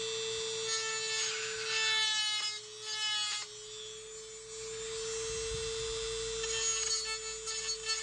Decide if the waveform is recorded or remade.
recorded